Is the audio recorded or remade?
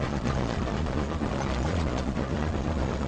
remade